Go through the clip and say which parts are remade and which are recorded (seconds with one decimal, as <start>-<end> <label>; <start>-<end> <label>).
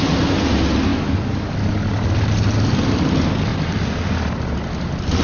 0.0-5.2 recorded